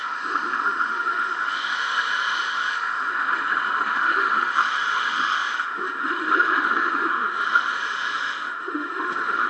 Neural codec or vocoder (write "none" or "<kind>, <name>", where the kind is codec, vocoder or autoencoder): autoencoder, DAC-VAE